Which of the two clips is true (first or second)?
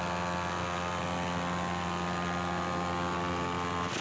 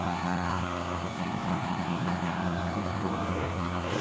first